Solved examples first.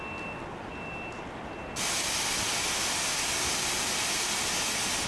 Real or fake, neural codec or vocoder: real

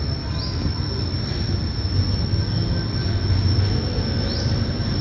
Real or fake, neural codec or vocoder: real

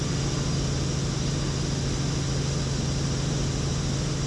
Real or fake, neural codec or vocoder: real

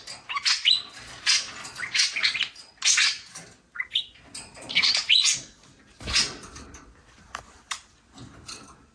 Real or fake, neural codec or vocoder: real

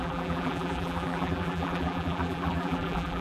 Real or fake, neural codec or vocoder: fake, vocoder, BigVGAN v2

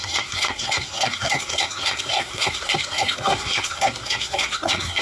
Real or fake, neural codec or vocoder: fake, codec, SNAC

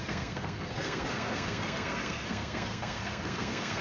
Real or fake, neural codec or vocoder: fake, codec, SNAC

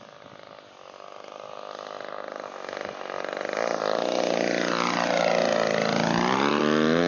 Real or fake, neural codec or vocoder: real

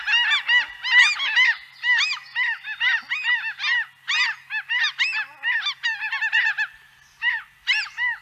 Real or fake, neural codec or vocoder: real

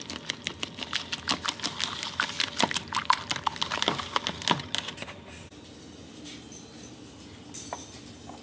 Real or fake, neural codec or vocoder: real